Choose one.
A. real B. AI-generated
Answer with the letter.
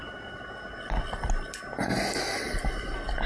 A